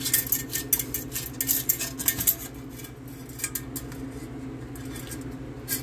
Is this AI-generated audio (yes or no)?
no